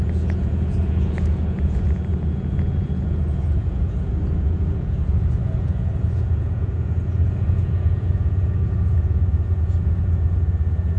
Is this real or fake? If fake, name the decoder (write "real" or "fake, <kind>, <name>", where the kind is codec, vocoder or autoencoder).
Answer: fake, vocoder, Vocos